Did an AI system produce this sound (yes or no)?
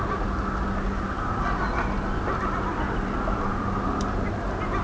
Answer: no